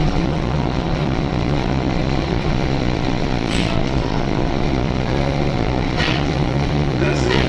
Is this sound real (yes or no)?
no